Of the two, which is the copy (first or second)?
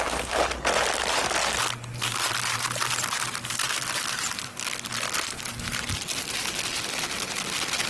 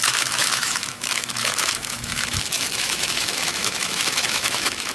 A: second